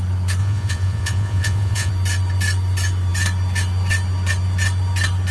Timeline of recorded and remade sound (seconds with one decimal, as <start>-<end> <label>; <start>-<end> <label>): 0.0-0.4 recorded; 0.4-1.9 remade; 1.9-5.3 recorded